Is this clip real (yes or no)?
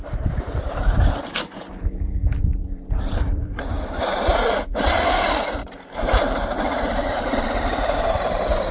no